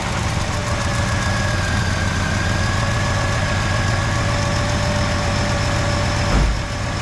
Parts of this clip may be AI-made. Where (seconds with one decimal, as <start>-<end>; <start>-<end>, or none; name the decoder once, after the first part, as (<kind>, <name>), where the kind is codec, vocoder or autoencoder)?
none